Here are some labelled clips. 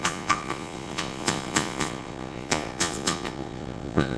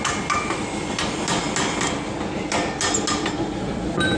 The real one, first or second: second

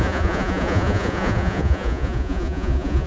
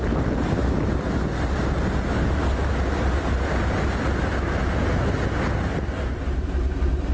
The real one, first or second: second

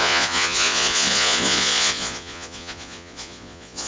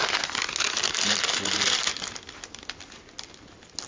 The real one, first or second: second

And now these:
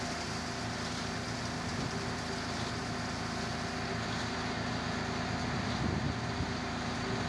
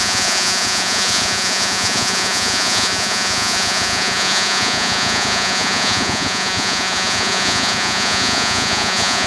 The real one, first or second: first